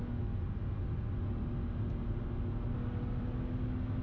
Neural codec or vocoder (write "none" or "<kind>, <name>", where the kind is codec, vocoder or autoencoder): none